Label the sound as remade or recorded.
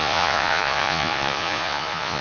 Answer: remade